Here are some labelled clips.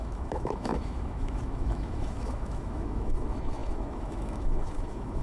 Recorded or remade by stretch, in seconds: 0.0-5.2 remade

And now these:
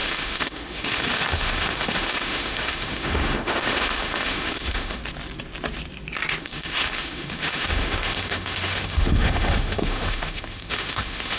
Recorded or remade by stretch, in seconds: 0.0-5.0 remade; 5.0-6.4 recorded; 6.4-11.4 remade

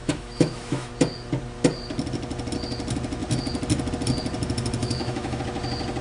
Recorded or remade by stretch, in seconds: 0.0-0.9 remade; 0.9-4.8 recorded; 4.8-5.4 remade; 5.4-6.0 recorded

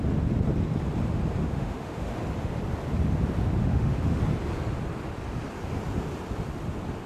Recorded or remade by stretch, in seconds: 0.0-1.4 recorded; 1.4-2.2 remade; 2.2-3.6 recorded; 3.6-4.2 remade; 4.2-7.1 recorded

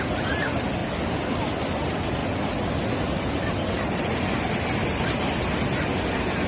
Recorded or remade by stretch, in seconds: 0.0-6.5 recorded